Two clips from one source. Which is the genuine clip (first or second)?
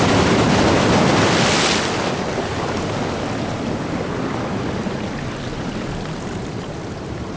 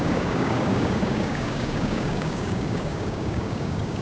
first